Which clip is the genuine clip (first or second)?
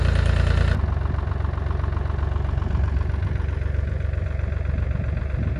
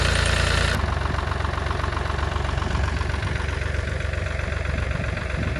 first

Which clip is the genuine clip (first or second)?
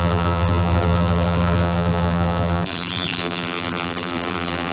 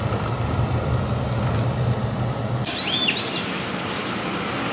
second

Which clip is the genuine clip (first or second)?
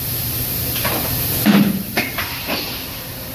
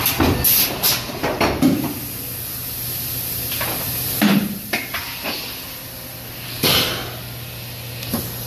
second